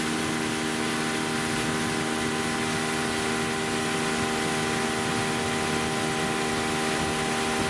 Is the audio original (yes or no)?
yes